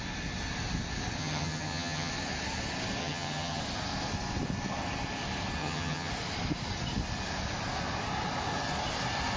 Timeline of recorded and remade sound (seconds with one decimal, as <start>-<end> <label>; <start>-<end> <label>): 0.0-1.2 recorded; 1.2-2.1 remade; 2.1-3.0 recorded; 3.0-3.6 remade; 3.6-5.6 recorded; 5.6-6.1 remade; 6.1-9.4 recorded